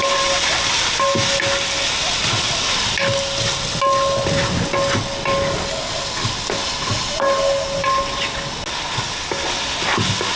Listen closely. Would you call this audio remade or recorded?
recorded